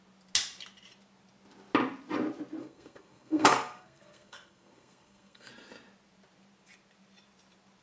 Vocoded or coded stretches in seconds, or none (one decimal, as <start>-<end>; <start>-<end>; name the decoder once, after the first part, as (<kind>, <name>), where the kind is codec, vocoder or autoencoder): 2.6-5.5 (codec, SNAC)